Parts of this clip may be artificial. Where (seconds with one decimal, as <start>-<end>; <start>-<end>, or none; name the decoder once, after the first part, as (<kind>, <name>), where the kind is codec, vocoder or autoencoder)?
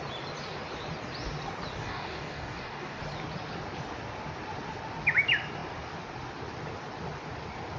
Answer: 1.8-3.0 (codec, DAC)